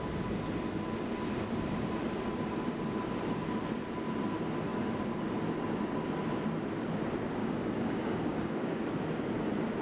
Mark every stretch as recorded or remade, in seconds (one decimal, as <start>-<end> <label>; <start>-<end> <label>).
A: 0.0-7.4 recorded; 7.4-8.9 remade; 8.9-9.8 recorded